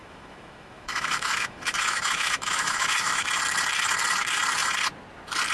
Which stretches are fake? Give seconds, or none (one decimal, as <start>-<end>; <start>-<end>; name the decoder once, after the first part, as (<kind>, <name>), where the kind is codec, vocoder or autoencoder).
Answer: 0.0-3.3 (autoencoder, DAC-VAE)